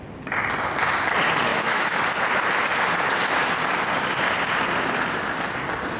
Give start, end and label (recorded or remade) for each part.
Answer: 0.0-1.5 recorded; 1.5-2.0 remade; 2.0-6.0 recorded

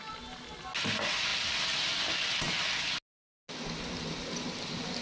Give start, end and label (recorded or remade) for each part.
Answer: 0.0-5.0 recorded

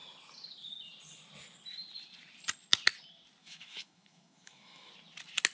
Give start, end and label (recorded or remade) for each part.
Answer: 0.0-3.4 recorded; 3.4-4.9 remade; 4.9-5.5 recorded

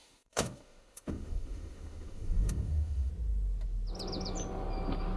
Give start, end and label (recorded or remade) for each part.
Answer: 0.0-3.1 remade; 3.1-5.2 recorded

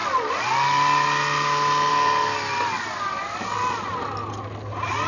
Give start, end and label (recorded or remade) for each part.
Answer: 0.0-5.1 recorded

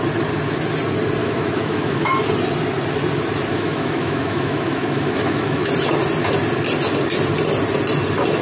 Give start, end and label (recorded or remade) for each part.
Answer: 0.0-1.2 recorded; 1.2-2.1 remade; 2.1-3.5 recorded; 3.5-5.7 remade; 5.7-8.4 recorded

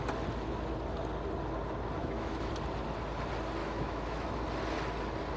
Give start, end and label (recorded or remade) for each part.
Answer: 0.0-2.0 recorded; 2.0-2.5 remade; 2.5-3.6 recorded; 3.6-4.4 remade; 4.4-5.4 recorded

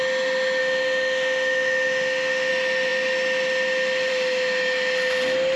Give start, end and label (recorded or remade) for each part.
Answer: 0.0-0.6 recorded; 0.6-2.5 remade; 2.5-5.6 recorded